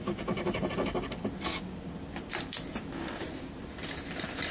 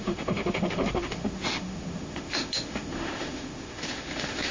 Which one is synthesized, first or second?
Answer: second